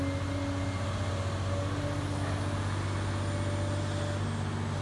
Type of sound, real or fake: real